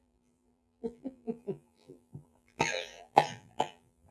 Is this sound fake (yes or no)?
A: yes